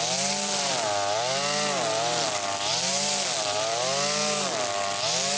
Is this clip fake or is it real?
real